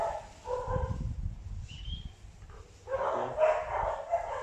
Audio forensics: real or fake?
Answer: real